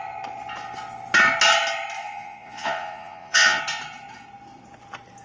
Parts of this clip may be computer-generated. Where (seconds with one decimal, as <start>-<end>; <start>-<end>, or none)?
2.0-3.6